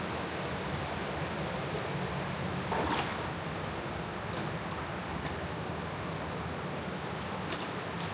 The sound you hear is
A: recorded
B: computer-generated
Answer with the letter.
A